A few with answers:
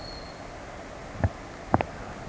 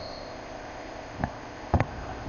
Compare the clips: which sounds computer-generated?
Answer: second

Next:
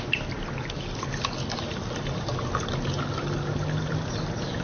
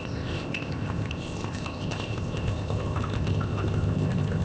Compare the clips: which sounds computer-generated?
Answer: second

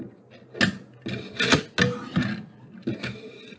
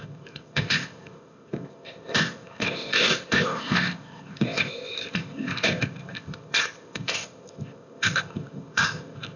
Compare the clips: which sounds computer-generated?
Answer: second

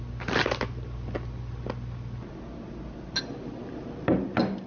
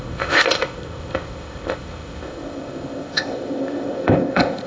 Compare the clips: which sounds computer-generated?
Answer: second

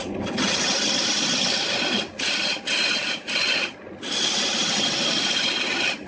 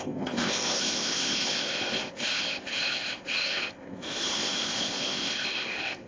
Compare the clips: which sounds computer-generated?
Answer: second